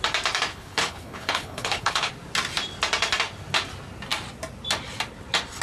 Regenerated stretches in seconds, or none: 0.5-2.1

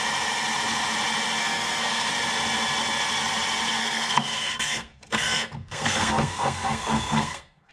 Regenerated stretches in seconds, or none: 1.4-2.1; 3.8-7.7